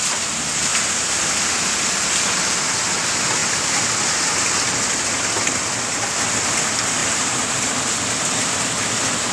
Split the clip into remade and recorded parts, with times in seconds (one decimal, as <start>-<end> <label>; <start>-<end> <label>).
0.0-7.0 recorded; 7.0-7.7 remade; 7.7-9.3 recorded